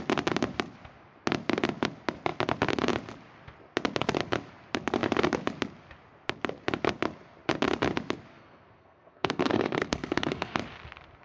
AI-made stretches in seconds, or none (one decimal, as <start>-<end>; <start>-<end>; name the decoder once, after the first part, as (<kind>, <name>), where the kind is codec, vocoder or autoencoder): 8.3-10.6 (codec, SNAC)